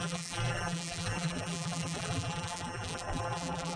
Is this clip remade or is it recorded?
remade